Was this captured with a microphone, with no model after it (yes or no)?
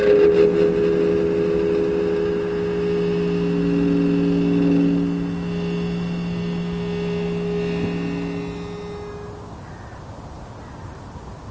yes